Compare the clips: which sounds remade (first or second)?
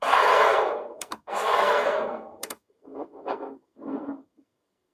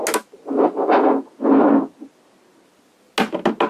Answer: first